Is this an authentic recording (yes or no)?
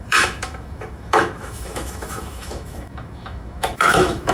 no